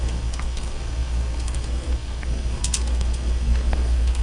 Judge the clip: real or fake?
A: fake